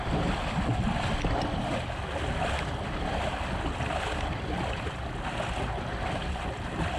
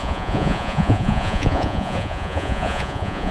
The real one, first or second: first